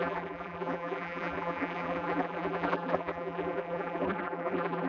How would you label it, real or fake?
fake